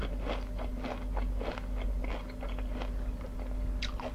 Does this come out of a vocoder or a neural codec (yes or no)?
no